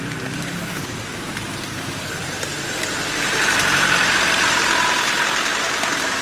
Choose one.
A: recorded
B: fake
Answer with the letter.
B